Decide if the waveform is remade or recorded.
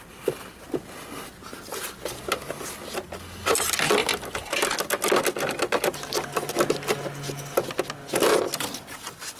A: recorded